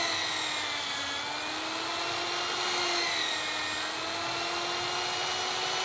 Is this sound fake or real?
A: real